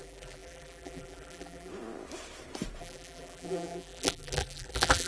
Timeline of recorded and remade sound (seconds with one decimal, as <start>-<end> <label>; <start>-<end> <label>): 0.0-1.7 remade; 1.7-2.8 recorded; 2.8-5.1 remade